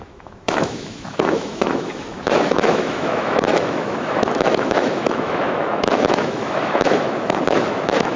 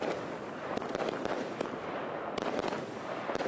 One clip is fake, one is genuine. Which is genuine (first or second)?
second